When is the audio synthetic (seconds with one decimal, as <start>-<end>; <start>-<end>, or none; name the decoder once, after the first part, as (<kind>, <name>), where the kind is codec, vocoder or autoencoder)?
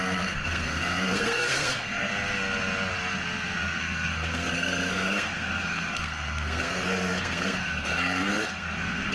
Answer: 0.0-2.1 (codec, SNAC); 3.8-9.1